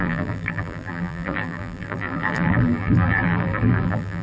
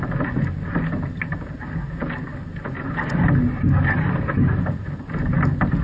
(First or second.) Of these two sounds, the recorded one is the second